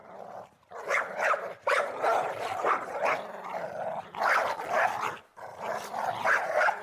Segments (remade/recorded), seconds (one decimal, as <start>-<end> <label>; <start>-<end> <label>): 0.0-4.1 remade; 4.1-6.8 recorded